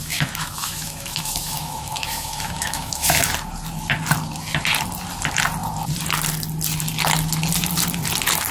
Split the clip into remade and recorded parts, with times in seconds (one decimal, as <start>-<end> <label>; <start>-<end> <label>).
0.0-3.3 remade; 3.3-8.5 recorded